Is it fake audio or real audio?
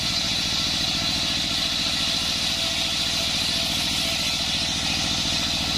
real